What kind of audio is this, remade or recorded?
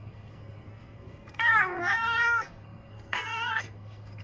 remade